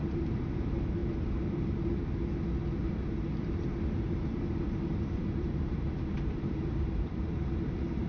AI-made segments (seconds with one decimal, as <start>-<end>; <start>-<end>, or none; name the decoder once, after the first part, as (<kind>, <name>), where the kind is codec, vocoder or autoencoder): 0.0-1.0 (vocoder, BigVGAN v2); 4.0-8.1